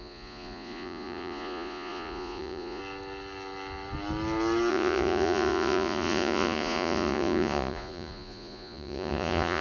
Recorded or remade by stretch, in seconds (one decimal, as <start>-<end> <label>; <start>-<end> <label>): 0.0-2.8 remade; 2.8-4.7 recorded; 4.7-9.6 remade